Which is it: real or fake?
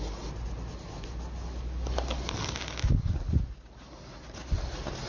real